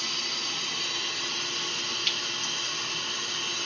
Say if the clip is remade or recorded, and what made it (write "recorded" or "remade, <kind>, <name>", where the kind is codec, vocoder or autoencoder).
recorded